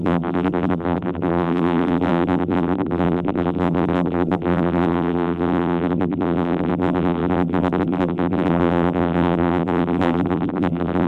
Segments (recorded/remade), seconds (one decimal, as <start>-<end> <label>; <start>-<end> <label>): 0.0-11.1 remade